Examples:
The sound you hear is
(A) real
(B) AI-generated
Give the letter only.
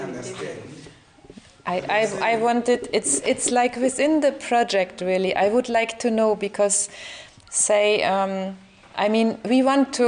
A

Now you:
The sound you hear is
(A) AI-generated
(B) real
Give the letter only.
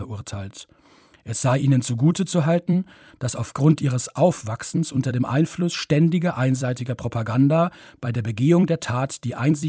A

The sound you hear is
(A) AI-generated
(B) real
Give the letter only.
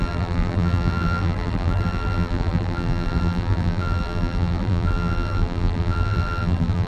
A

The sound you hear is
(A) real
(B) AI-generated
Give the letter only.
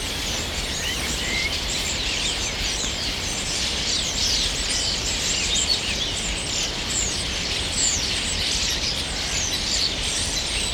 B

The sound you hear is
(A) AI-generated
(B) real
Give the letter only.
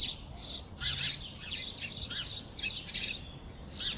B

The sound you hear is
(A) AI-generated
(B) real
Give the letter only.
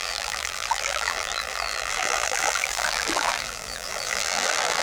A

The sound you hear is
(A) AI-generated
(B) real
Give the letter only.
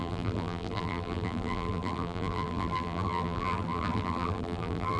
A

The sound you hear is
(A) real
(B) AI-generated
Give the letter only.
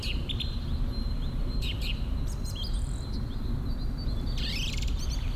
B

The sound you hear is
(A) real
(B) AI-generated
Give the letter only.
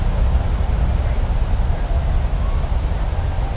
A